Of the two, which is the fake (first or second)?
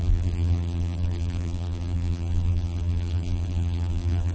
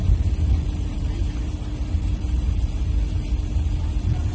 first